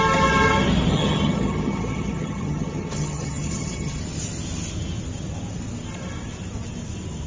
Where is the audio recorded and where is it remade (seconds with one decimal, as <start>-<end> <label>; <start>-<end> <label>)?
0.0-0.9 recorded; 0.9-4.0 remade; 4.0-7.3 recorded

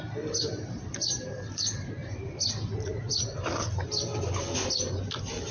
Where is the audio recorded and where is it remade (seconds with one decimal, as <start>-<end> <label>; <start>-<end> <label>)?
0.0-5.5 recorded

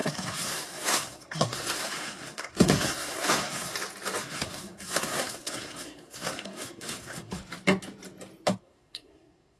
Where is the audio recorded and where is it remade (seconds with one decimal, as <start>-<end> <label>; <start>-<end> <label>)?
0.0-3.7 remade; 3.7-4.2 recorded; 4.2-7.4 remade; 7.4-8.6 recorded; 8.6-9.6 remade

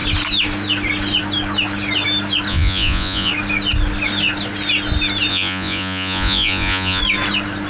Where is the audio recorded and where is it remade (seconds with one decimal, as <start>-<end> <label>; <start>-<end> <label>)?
0.0-2.5 recorded; 2.5-3.3 remade; 3.3-5.3 recorded; 5.3-7.0 remade; 7.0-7.7 recorded

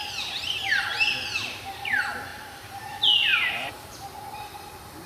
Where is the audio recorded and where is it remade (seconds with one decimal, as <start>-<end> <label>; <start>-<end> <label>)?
0.0-2.3 recorded; 2.3-2.8 remade; 2.8-3.3 recorded; 3.3-3.9 remade; 3.9-5.1 recorded

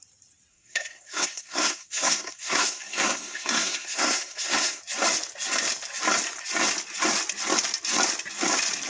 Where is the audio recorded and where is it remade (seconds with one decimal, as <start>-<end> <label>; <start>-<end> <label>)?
0.0-0.5 recorded; 0.5-4.8 remade; 4.8-8.9 recorded

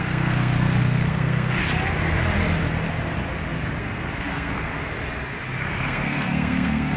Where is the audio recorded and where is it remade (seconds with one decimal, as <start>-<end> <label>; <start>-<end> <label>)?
0.0-1.6 remade; 1.6-3.8 recorded; 3.8-4.7 remade; 4.7-5.6 recorded; 5.6-7.0 remade